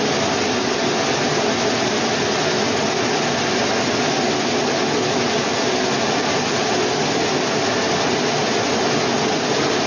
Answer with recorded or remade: recorded